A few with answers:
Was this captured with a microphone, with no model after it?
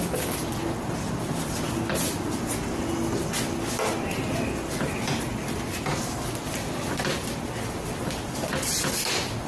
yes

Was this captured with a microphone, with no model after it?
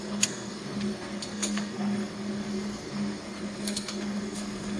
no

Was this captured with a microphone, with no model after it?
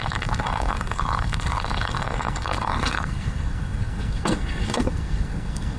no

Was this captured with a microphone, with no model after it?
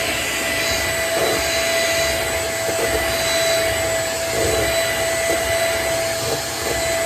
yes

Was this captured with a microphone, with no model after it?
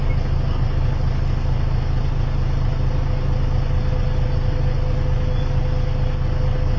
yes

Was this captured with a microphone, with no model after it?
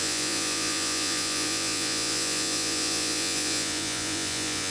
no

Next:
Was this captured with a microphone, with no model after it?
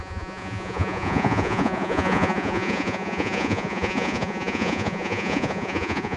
no